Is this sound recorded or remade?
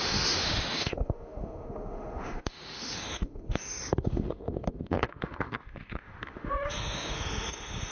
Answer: remade